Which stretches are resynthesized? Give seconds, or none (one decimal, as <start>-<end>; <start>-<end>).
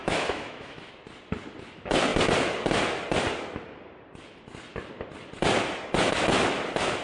0.0-0.9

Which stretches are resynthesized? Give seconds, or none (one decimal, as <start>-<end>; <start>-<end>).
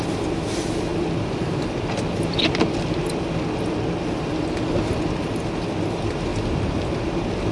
none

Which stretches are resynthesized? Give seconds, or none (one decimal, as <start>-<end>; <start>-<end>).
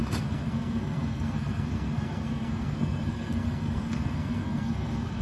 0.0-5.2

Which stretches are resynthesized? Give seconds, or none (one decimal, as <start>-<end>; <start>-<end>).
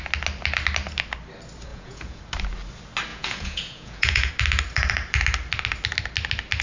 1.7-2.2; 3.1-4.3